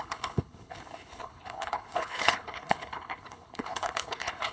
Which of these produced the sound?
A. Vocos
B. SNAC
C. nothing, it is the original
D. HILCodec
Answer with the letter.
D